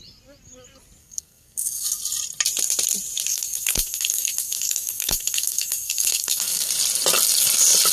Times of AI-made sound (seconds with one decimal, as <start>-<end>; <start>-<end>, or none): 1.0-2.0; 3.3-6.7